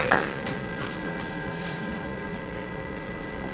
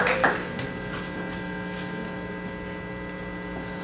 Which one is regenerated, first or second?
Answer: first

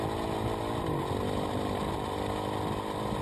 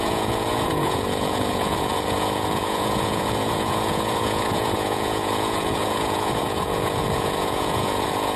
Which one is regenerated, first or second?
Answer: second